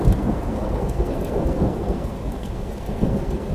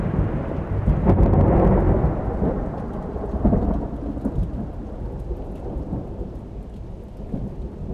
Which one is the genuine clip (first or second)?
second